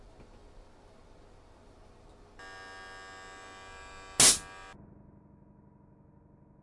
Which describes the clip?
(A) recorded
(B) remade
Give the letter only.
A